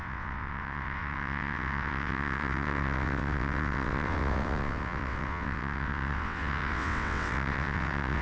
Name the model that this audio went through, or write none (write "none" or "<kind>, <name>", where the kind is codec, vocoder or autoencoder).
vocoder, WaveNeXt